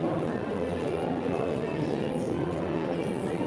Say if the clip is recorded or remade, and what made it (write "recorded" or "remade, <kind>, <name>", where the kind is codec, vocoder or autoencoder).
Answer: remade, vocoder, WaveNeXt